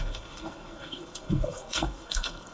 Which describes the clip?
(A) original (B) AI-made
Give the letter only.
B